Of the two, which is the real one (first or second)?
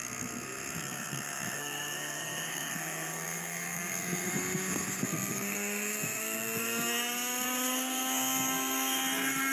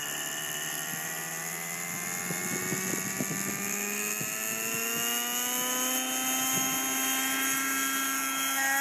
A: second